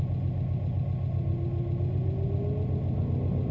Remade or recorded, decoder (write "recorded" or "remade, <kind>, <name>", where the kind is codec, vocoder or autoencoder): recorded